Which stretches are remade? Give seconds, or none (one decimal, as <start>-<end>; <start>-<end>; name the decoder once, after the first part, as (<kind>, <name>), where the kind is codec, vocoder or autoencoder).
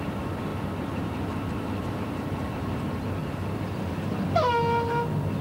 0.0-3.2 (vocoder, BigVGAN v2)